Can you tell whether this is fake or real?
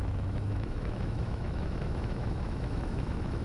fake